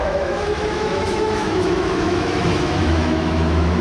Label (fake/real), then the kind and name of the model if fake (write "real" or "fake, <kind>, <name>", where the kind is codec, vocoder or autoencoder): fake, autoencoder, DAC-VAE